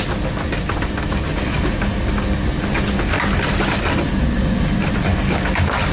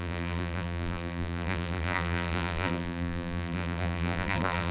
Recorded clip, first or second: first